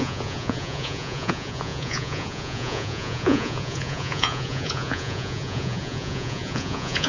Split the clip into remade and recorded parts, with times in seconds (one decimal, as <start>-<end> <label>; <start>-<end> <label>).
0.0-7.1 remade